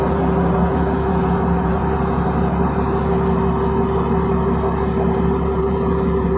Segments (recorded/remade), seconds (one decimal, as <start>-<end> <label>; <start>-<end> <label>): 0.0-1.8 remade; 1.8-5.6 recorded; 5.6-6.4 remade